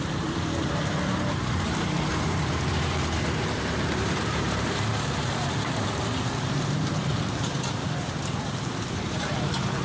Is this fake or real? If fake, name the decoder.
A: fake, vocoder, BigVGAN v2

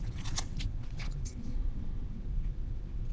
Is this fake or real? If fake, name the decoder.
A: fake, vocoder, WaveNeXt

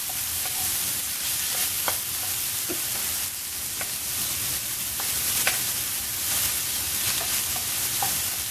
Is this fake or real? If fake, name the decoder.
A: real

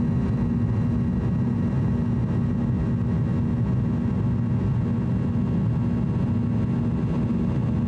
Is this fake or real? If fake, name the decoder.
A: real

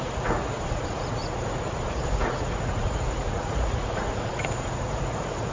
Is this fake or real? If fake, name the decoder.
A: fake, vocoder, Vocos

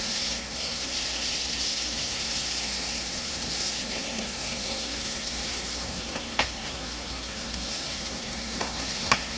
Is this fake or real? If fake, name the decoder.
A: fake, codec, SNAC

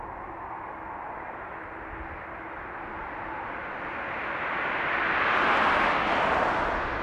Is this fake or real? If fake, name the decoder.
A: real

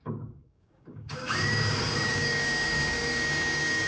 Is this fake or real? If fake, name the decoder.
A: fake, codec, DAC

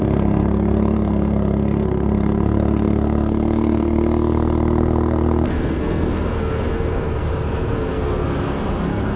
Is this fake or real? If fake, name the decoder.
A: fake, codec, SNAC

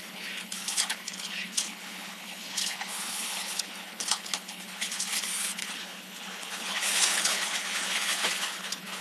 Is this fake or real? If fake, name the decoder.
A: fake, codec, HILCodec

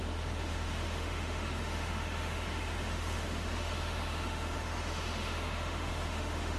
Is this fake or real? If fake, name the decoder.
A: fake, autoencoder, DAC-VAE